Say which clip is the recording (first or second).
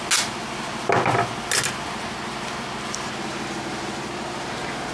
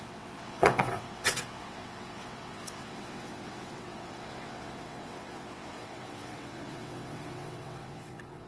first